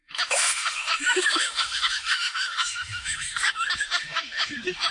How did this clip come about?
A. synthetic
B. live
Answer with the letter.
A